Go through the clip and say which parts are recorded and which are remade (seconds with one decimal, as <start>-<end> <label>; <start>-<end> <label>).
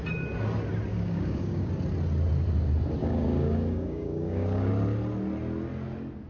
0.0-0.9 recorded; 0.9-1.7 remade; 1.7-3.0 recorded; 3.0-4.7 remade; 4.7-6.3 recorded